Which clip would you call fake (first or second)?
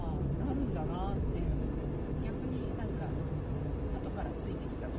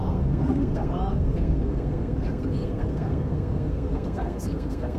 second